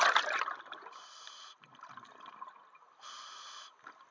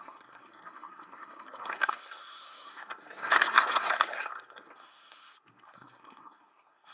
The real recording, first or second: first